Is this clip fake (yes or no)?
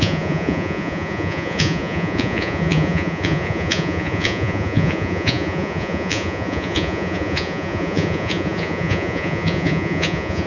yes